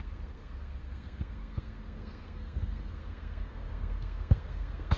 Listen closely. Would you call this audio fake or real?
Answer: fake